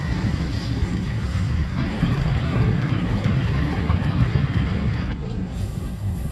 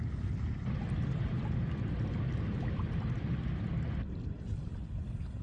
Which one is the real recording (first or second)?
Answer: second